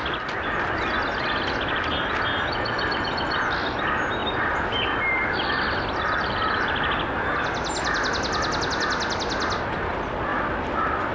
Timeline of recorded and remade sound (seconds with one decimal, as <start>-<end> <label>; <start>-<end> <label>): 0.0-11.1 recorded